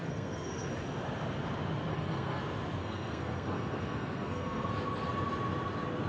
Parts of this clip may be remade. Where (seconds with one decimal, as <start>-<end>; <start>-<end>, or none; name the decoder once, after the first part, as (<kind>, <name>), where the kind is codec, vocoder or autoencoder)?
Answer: 0.0-0.7 (codec, SNAC); 1.9-2.4; 2.8-4.7